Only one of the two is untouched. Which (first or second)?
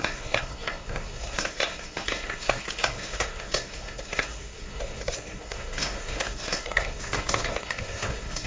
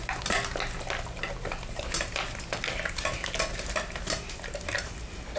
second